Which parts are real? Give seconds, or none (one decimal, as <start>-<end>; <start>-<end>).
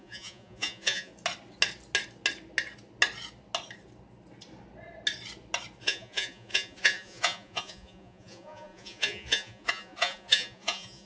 1.1-5.8